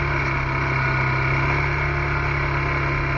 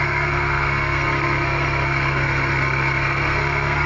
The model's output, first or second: second